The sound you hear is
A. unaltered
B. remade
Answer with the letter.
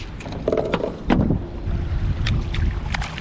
A